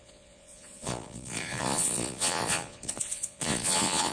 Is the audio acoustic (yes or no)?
no